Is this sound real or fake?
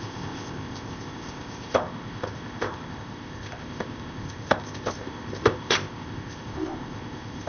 fake